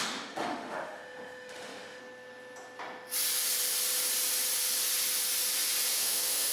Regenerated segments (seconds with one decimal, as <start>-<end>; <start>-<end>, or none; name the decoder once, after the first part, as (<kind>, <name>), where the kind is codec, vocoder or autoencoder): 0.0-2.0 (autoencoder, DAC-VAE); 5.9-6.5